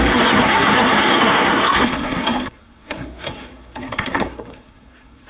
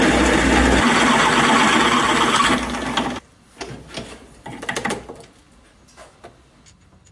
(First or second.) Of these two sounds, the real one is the second